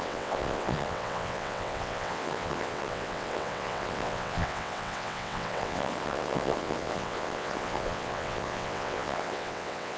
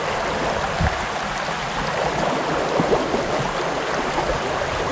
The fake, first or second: first